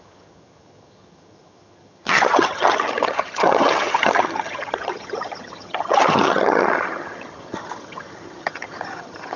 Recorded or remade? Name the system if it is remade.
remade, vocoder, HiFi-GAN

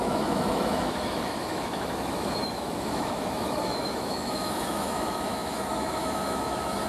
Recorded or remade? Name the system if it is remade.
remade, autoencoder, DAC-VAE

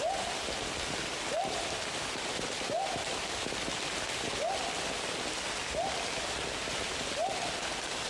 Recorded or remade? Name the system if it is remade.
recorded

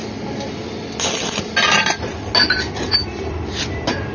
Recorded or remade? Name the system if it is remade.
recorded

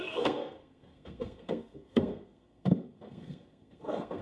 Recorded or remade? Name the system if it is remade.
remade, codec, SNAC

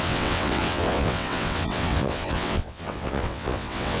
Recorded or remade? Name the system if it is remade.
remade, vocoder, WaveNeXt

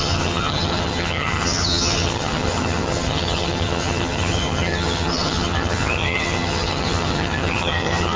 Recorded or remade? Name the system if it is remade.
remade, vocoder, HiFi-GAN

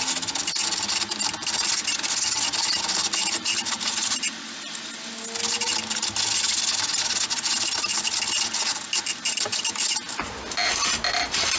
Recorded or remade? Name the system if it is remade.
recorded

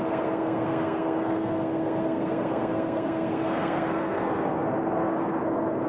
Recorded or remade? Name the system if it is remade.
remade, codec, SNAC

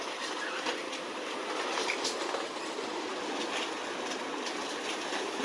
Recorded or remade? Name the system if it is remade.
recorded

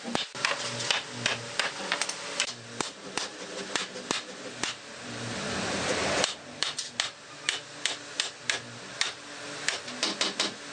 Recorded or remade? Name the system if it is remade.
recorded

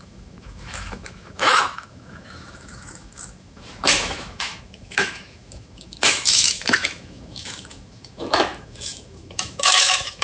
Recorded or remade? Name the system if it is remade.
remade, autoencoder, DAC-VAE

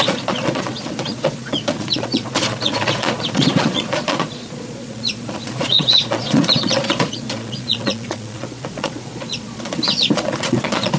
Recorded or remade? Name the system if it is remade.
remade, vocoder, Vocos